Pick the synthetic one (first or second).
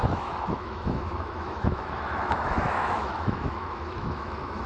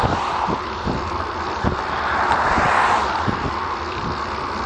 first